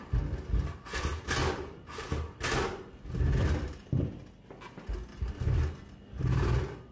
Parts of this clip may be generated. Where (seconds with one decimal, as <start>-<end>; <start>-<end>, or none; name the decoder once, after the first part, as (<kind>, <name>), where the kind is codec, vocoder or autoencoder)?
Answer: none